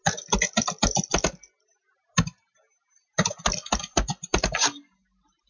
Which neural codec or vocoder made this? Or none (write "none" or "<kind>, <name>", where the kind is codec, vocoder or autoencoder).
none